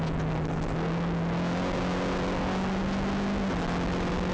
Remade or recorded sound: recorded